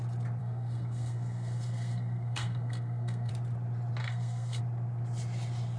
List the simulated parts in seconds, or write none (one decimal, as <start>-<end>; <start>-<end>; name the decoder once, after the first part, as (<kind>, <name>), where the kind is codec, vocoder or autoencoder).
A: 0.4-3.3 (codec, SNAC); 4.0-4.6

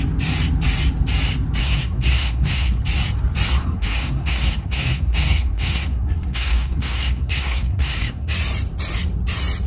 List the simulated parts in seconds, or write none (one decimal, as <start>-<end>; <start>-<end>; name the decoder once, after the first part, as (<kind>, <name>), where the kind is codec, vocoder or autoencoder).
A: 1.6-2.8 (codec, SNAC); 3.6-8.3

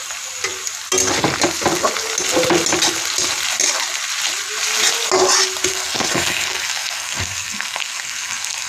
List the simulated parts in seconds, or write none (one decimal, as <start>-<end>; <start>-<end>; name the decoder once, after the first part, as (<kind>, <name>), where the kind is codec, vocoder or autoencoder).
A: 5.7-8.7 (codec, SNAC)

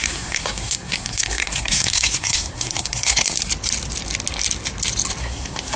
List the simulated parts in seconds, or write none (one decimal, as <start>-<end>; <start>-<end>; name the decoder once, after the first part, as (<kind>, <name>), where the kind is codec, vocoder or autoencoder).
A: 0.0-3.5 (codec, SNAC); 5.2-5.8

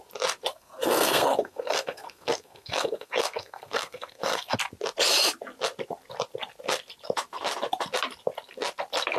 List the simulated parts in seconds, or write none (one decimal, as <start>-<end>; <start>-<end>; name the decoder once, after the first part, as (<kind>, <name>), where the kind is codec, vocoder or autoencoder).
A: 0.5-4.6 (codec, SNAC)

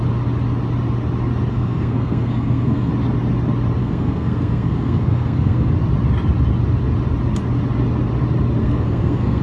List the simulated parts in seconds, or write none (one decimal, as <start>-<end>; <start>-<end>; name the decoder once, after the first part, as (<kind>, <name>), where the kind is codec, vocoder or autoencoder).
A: 1.5-2.9 (codec, SNAC); 3.8-5.7; 8.6-9.4

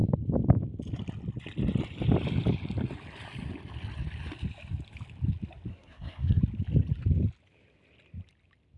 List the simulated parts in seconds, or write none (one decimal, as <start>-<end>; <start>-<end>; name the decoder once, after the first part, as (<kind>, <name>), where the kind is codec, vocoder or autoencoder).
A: 5.7-6.4 (codec, SNAC)